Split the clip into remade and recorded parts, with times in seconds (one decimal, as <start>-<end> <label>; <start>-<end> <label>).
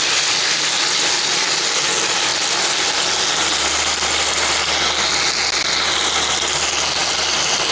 0.0-7.7 recorded